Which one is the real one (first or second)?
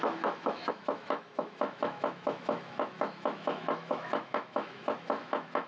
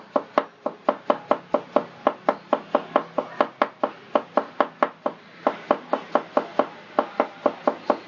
second